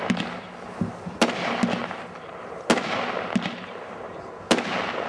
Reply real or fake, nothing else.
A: real